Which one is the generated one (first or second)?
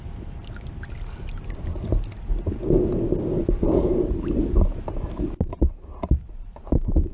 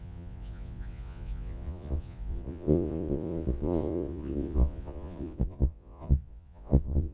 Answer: second